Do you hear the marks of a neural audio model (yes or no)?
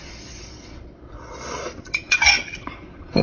yes